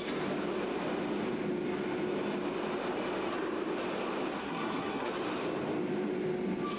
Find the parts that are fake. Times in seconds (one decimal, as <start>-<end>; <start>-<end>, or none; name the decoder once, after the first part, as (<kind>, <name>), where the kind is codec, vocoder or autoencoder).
4.4-5.1 (codec, SNAC)